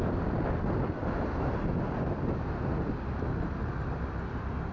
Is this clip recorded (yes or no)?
yes